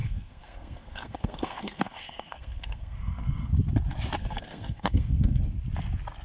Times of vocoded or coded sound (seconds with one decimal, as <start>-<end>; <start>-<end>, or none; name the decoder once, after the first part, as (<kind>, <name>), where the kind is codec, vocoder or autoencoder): 0.0-3.5 (codec, SNAC); 4.2-5.4